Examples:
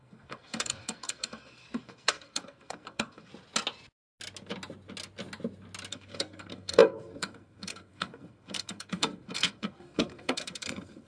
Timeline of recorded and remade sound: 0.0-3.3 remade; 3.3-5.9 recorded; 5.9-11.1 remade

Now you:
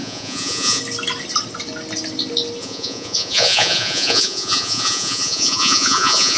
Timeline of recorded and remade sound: 0.0-0.8 remade; 0.8-2.6 recorded; 2.6-6.4 remade

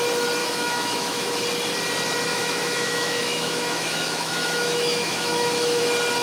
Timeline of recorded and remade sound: 0.0-0.4 recorded; 0.4-1.4 remade; 1.4-2.3 recorded; 2.3-5.8 remade; 5.8-6.2 recorded

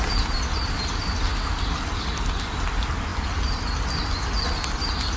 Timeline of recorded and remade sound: 0.0-5.2 recorded

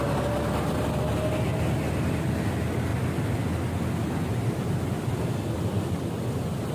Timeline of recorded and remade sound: 0.0-6.7 recorded

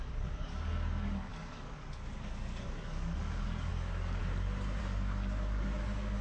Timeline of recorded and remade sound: 0.0-4.2 remade; 4.2-4.8 recorded; 4.8-6.2 remade

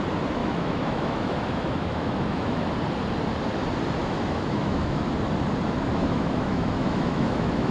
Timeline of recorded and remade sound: 0.0-0.4 recorded; 0.4-2.7 remade; 2.7-4.0 recorded; 4.0-5.1 remade; 5.1-5.9 recorded; 5.9-7.7 remade

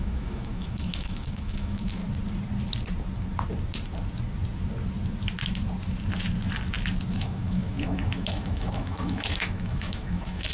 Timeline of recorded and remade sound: 0.0-2.0 remade; 2.0-7.1 recorded; 7.1-10.5 remade